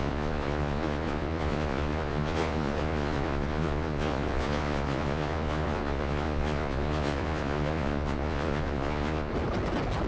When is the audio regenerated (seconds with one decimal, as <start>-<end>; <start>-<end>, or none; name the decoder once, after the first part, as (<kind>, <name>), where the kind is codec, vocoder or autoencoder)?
0.0-9.3 (vocoder, Vocos)